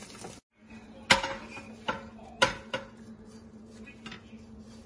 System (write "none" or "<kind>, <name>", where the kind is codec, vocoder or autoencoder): none